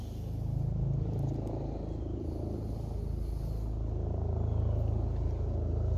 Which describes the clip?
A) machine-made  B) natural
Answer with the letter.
B